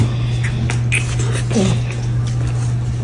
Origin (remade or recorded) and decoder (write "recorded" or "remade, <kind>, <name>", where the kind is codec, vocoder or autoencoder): recorded